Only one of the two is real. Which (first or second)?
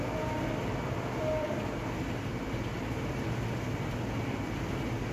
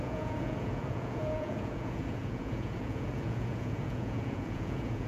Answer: first